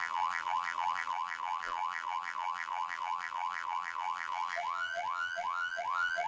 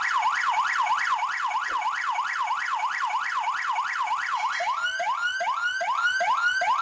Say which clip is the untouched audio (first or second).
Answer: second